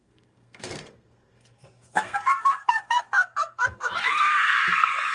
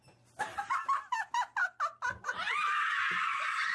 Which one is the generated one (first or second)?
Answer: first